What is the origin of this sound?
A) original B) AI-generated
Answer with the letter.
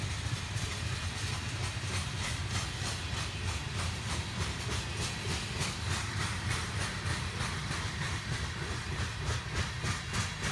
A